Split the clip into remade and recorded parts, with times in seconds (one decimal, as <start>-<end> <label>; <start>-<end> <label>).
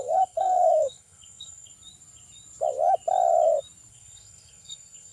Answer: 0.0-1.7 remade; 1.7-3.9 recorded; 3.9-5.1 remade